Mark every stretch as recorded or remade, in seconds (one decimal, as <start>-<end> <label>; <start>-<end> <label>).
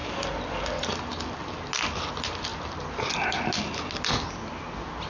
0.0-5.1 recorded